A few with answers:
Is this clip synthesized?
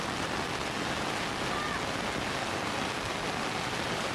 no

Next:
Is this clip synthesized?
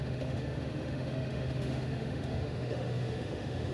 yes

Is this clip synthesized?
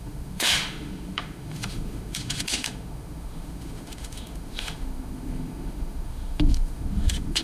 yes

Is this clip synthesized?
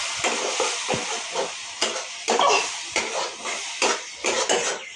no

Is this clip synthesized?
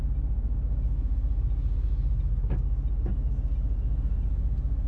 no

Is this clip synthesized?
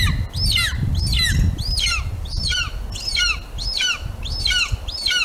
no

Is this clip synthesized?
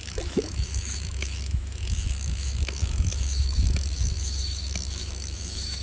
yes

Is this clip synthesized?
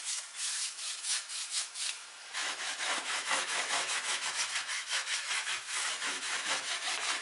yes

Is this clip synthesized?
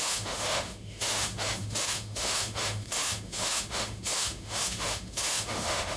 yes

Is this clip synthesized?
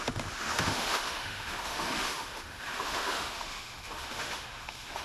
yes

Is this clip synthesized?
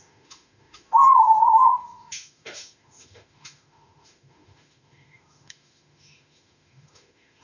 yes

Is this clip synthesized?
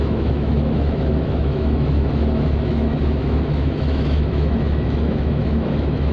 yes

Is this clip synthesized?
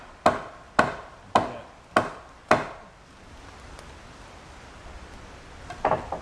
no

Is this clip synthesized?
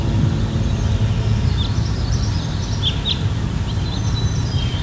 no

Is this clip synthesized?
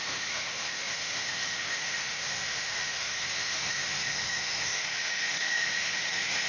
yes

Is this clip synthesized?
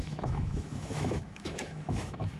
yes